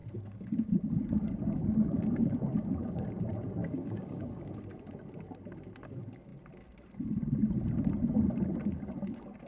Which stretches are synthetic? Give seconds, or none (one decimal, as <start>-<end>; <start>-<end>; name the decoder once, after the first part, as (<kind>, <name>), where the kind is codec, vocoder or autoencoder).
0.0-3.2 (codec, DAC); 3.6-4.5